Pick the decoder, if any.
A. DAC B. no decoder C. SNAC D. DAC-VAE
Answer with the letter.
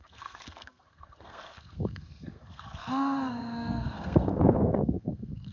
C